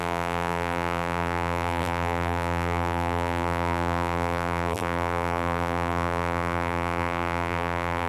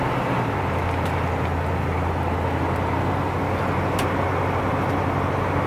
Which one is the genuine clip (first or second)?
second